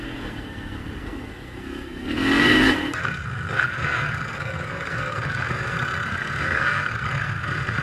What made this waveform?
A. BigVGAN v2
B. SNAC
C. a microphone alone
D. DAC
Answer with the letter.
B